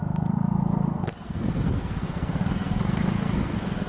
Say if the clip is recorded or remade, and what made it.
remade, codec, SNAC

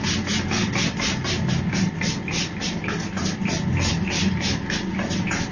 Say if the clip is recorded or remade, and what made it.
recorded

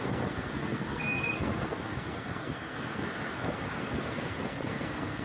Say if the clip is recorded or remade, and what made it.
remade, codec, SNAC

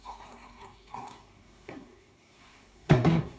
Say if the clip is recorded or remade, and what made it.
remade, codec, SNAC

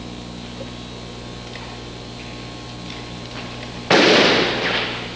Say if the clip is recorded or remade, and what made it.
recorded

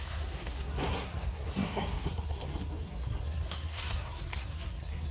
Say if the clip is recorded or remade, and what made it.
remade, codec, SNAC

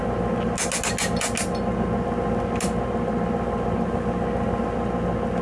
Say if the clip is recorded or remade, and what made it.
recorded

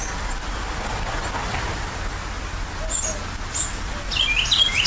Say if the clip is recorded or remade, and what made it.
recorded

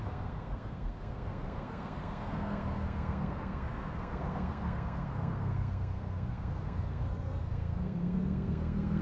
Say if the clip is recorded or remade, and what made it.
remade, codec, SNAC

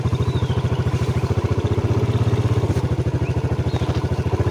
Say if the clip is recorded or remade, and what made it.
recorded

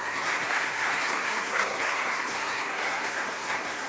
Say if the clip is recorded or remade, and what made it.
remade, codec, SNAC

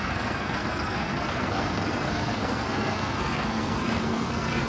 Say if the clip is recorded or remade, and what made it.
remade, codec, SNAC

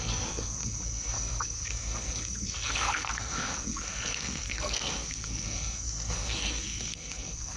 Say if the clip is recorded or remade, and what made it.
remade, codec, SNAC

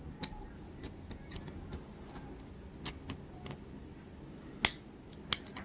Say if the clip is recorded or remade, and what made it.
recorded